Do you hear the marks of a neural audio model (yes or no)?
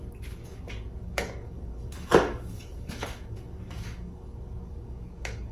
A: yes